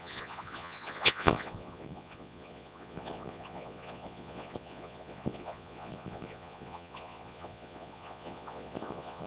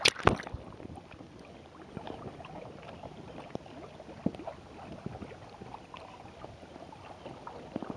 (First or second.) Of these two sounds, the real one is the second